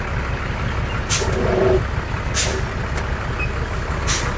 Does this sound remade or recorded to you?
recorded